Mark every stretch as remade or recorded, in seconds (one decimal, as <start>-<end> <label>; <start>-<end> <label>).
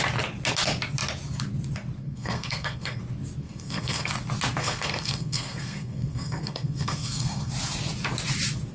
0.0-2.0 recorded; 2.0-3.0 remade; 3.0-3.4 recorded; 3.4-4.1 remade; 4.1-4.6 recorded; 4.6-7.5 remade; 7.5-8.7 recorded